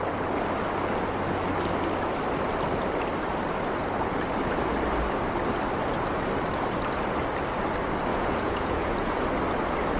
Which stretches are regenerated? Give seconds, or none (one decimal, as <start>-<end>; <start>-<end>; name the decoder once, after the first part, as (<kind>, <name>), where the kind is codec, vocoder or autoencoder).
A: 8.1-9.2 (vocoder, Vocos)